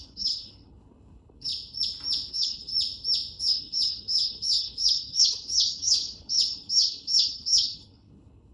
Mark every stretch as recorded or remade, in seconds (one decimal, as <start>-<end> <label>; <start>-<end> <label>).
0.0-1.5 remade; 1.5-2.3 recorded; 2.3-2.7 remade; 2.7-3.4 recorded; 3.4-8.5 remade